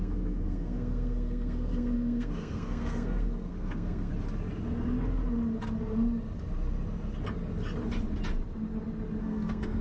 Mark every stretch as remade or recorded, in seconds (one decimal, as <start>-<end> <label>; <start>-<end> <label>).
0.0-4.1 remade; 4.1-9.2 recorded; 9.2-9.8 remade